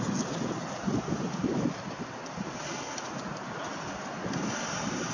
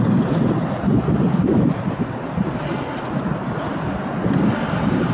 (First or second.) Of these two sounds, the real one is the first